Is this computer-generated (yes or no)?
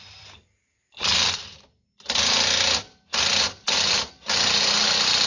no